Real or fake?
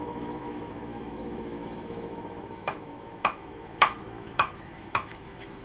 fake